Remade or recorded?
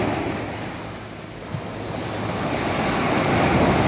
recorded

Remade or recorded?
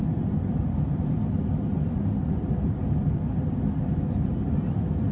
recorded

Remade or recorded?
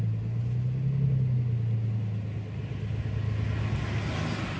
recorded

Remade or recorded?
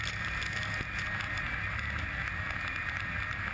recorded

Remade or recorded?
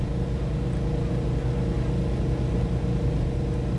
recorded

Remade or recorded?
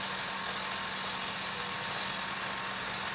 recorded